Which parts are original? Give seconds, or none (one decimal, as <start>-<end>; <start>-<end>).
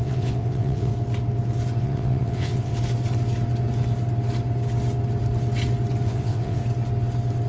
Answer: 0.9-1.8; 2.7-6.1; 6.6-7.5